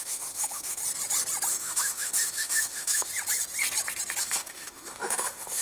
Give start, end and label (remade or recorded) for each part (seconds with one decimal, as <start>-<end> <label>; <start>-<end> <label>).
0.0-0.8 remade; 0.8-1.5 recorded; 1.5-3.1 remade; 3.1-4.2 recorded; 4.2-5.6 remade